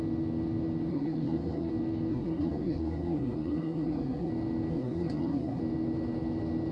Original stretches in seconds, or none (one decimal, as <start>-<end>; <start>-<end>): 0.0-0.9; 1.7-2.1; 4.3-4.7; 5.6-6.7